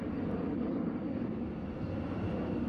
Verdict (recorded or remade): recorded